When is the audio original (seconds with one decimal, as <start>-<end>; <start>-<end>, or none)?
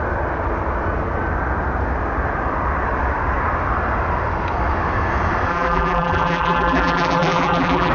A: 0.0-5.5